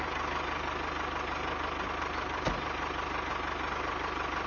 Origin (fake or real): real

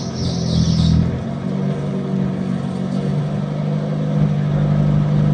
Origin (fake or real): real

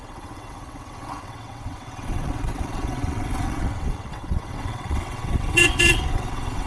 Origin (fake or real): fake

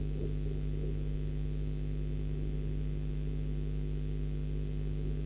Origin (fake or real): real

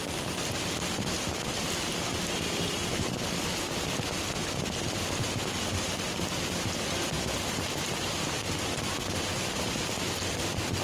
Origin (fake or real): real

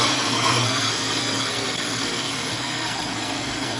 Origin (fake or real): fake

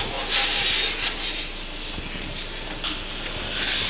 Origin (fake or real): real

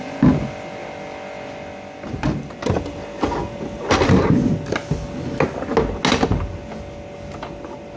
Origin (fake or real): real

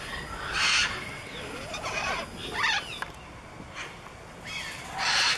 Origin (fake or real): real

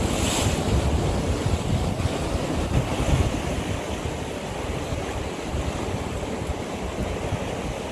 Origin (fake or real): real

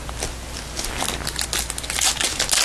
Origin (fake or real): real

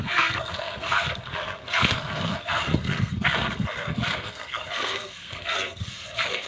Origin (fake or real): fake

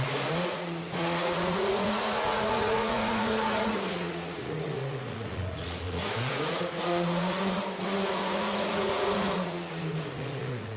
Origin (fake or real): fake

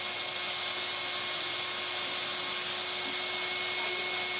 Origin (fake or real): real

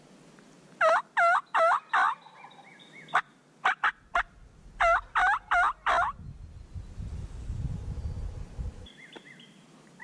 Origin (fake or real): real